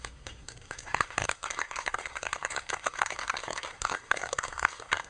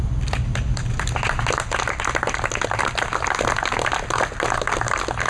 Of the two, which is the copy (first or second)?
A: first